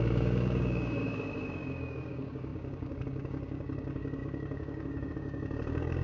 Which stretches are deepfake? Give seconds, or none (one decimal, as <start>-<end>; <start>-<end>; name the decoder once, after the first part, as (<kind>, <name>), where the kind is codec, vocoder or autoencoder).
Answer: 0.0-6.0 (codec, DAC)